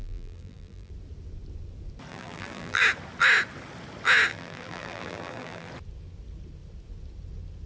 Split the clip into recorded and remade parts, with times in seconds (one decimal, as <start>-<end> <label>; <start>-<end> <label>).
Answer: 0.0-0.9 remade; 0.9-2.1 recorded; 2.1-2.8 remade; 2.8-4.3 recorded; 4.3-5.7 remade; 5.7-7.7 recorded